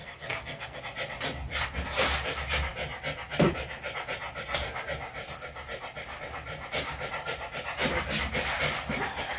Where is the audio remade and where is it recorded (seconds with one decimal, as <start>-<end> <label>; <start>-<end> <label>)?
0.0-0.8 remade; 0.8-9.4 recorded